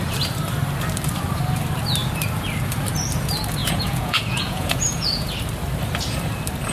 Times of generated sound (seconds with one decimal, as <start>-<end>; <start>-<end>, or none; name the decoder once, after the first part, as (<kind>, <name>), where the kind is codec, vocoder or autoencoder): 3.6-5.3 (vocoder, Vocos)